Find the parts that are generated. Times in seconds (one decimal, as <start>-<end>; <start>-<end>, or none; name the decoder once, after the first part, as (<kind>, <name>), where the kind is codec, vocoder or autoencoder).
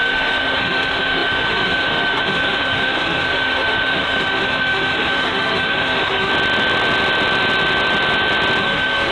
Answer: 0.0-6.3 (autoencoder, DAC-VAE); 8.6-9.1